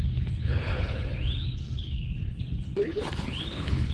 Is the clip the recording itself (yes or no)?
no